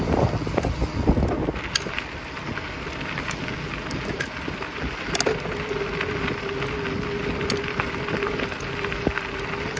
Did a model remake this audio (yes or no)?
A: no